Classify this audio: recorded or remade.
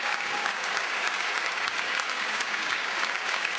remade